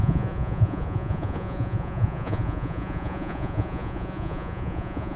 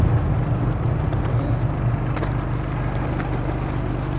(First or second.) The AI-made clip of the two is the first